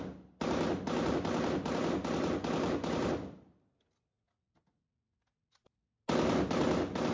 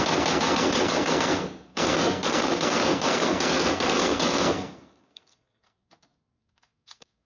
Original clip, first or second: first